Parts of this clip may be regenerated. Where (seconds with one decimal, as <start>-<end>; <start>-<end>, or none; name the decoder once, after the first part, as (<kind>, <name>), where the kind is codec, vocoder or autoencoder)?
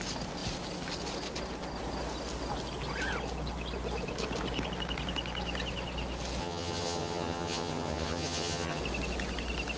6.4-8.8 (vocoder, HiFi-GAN)